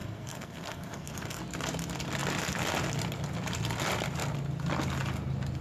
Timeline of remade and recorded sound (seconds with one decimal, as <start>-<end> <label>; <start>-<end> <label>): 0.0-1.4 remade; 1.4-5.6 recorded